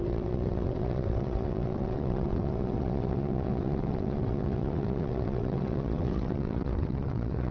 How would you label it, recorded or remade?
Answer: remade